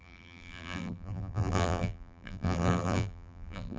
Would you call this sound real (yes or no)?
no